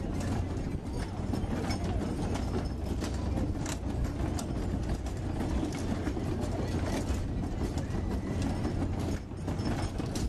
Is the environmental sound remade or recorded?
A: recorded